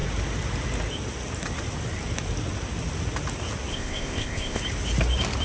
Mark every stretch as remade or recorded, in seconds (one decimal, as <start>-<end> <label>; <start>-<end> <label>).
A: 0.0-3.7 recorded; 3.7-4.6 remade; 4.6-5.4 recorded

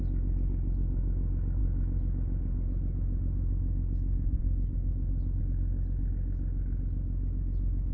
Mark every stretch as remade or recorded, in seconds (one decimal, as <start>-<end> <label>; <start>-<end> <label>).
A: 0.0-7.9 recorded

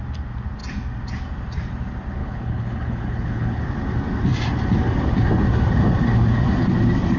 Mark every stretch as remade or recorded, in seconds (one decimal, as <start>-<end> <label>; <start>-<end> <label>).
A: 0.0-2.2 recorded; 2.2-3.6 remade; 3.6-7.2 recorded

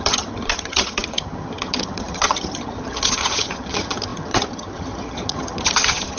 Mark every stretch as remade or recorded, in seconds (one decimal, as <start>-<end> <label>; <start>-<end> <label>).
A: 0.0-6.2 remade